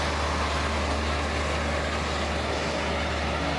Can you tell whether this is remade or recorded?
recorded